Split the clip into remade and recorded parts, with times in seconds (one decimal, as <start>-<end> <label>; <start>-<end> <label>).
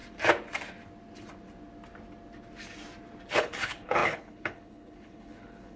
0.0-3.3 recorded; 3.3-5.8 remade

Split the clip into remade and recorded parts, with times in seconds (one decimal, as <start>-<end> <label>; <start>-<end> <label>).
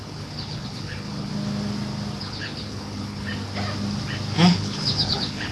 0.0-1.3 remade; 1.3-2.2 recorded; 2.2-3.3 remade; 3.3-4.5 recorded; 4.5-5.5 remade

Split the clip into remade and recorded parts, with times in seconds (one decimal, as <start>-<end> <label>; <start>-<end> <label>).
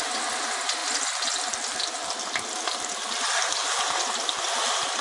0.0-5.0 recorded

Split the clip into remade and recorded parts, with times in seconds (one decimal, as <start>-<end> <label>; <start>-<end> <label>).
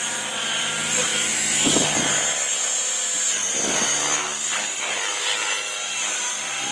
0.0-6.7 recorded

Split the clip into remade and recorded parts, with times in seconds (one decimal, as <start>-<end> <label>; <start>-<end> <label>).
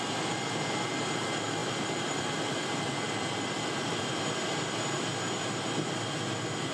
0.0-1.6 recorded; 1.6-4.2 remade; 4.2-6.7 recorded